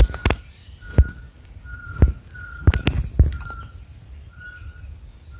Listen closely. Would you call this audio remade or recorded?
recorded